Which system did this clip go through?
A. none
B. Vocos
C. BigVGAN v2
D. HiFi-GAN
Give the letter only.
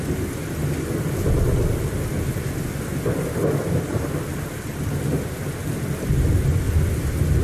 A